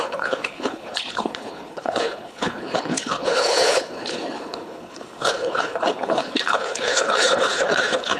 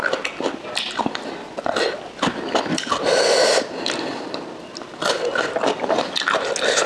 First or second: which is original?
second